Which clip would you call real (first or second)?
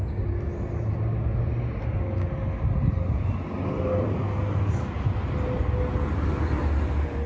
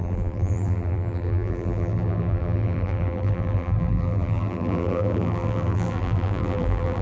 first